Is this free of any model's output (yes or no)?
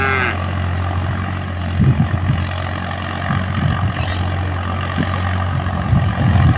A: yes